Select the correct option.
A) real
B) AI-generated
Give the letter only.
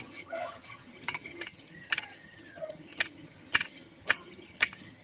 B